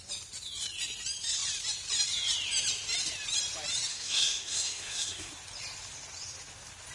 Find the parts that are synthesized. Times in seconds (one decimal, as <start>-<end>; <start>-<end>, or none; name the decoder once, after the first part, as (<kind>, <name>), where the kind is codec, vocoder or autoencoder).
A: 3.9-5.3 (codec, SNAC)